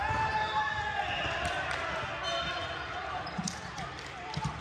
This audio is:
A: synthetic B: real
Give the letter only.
B